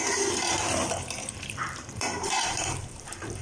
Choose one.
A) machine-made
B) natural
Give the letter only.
A